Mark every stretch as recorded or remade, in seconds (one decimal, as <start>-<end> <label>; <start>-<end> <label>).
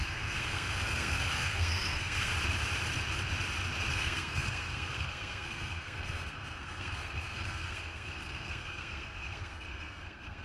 0.0-2.3 remade; 2.3-3.9 recorded; 3.9-10.4 remade